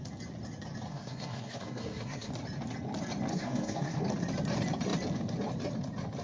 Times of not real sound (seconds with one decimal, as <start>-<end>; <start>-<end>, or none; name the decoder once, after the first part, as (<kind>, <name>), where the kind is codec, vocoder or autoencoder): 0.9-2.3 (codec, SNAC); 3.3-4.0